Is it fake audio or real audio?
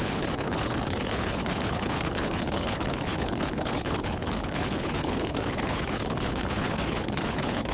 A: fake